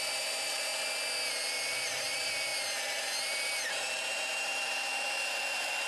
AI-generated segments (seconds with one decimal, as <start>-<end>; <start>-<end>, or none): 0.0-0.7; 1.3-5.9